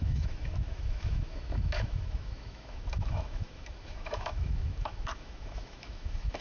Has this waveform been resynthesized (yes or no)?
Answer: yes